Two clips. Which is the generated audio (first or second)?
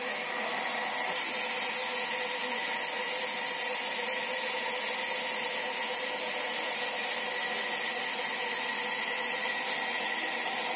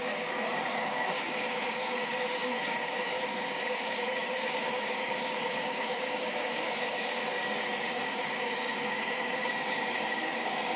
second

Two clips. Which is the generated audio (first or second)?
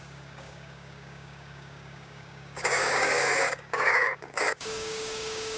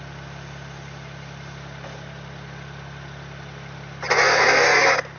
first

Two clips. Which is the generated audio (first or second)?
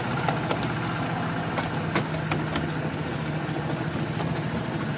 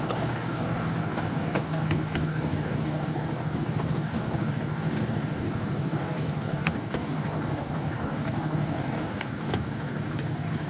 second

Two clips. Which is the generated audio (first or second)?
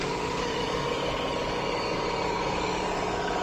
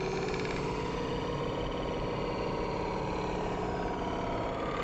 first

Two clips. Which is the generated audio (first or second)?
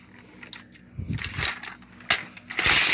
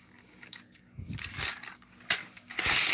second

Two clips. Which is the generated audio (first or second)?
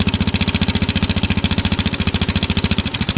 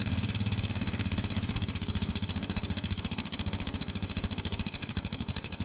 second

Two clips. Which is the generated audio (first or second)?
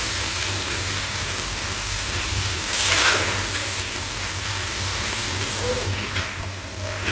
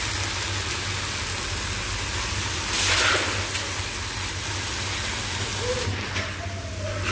first